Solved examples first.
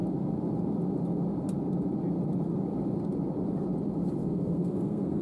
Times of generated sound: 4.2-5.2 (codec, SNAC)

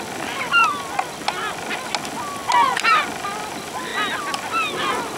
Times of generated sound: none

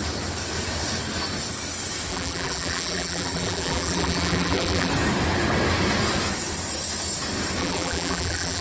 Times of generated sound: 2.1-4.9 (vocoder, BigVGAN v2); 7.6-8.6

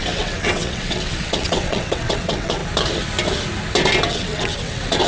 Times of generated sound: 0.0-2.6 (vocoder, WaveNeXt); 4.1-5.1

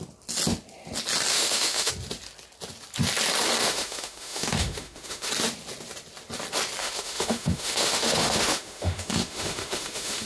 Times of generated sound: 1.3-1.9 (autoencoder, DAC-VAE); 3.6-5.3; 6.8-10.3

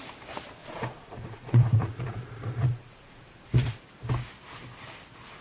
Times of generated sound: 0.6-3.8 (vocoder, Vocos)

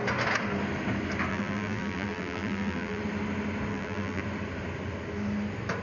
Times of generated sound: 1.3-3.0 (vocoder, BigVGAN v2); 3.7-4.2

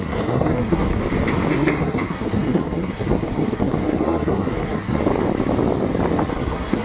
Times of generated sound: 0.0-1.0 (codec, SNAC); 1.5-5.1; 6.3-6.8